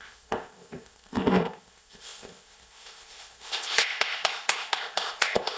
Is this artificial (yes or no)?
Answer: yes